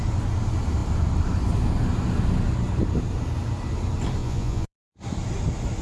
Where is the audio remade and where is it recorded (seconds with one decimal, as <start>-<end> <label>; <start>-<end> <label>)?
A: 0.0-4.2 recorded; 4.2-4.8 remade; 4.8-5.8 recorded